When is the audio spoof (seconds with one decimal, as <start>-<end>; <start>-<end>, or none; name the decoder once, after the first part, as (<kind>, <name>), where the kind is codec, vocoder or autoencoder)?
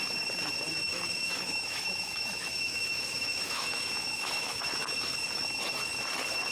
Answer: 0.7-4.6 (autoencoder, DAC-VAE)